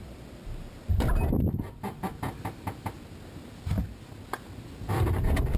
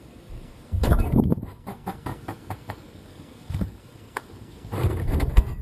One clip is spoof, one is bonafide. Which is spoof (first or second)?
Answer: second